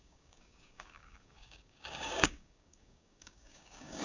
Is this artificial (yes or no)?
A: yes